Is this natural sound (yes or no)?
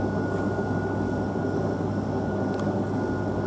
yes